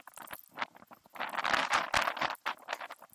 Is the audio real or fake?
real